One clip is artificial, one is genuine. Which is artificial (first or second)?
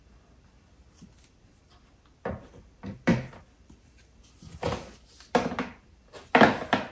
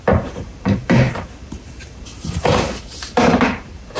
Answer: second